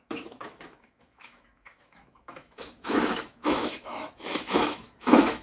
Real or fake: fake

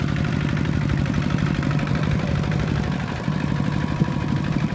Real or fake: fake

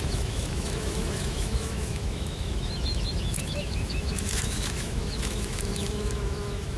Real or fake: fake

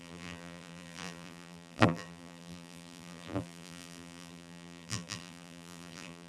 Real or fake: fake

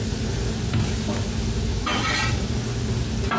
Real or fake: real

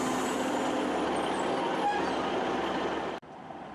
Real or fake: real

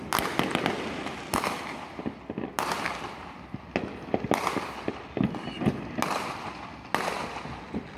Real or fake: real